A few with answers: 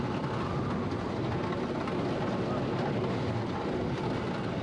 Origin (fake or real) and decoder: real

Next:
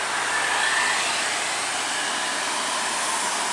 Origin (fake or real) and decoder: real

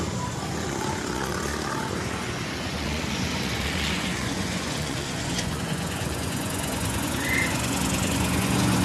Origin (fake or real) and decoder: fake, vocoder, Vocos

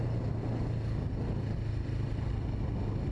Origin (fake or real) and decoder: real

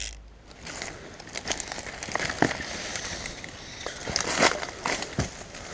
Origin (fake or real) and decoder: real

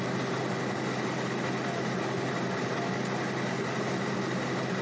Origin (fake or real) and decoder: real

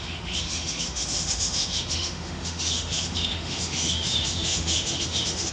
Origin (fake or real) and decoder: fake, autoencoder, DAC-VAE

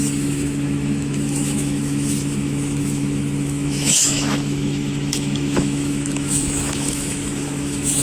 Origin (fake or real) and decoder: fake, autoencoder, DAC-VAE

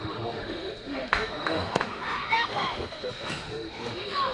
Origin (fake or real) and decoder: fake, autoencoder, DAC-VAE